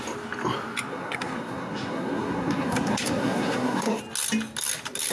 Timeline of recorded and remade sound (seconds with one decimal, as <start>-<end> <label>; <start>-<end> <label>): 0.0-0.9 recorded; 0.9-4.0 remade; 4.0-5.1 recorded